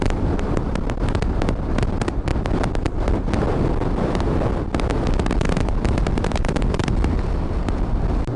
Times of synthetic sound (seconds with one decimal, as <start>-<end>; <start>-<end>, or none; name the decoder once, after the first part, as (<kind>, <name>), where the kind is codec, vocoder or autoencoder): 0.0-2.3 (vocoder, BigVGAN v2); 6.7-8.4